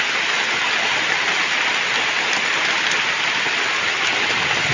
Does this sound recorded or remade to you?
recorded